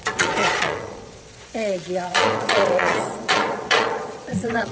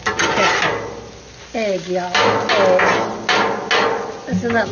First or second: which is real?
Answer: second